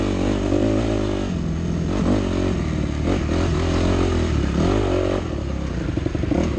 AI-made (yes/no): no